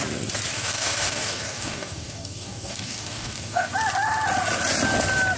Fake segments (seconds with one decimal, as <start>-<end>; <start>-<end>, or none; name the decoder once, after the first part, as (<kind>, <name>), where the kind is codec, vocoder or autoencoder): 0.5-3.7 (codec, DAC)